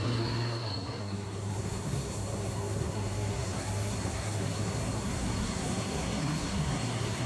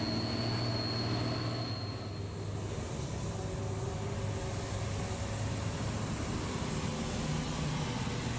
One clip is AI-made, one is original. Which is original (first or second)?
second